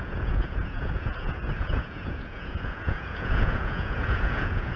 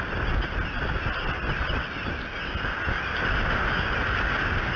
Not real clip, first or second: first